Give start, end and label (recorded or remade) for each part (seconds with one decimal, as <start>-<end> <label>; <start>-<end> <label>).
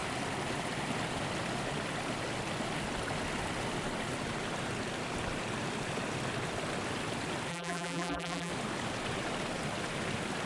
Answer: 0.0-7.5 recorded; 7.5-8.5 remade; 8.5-10.5 recorded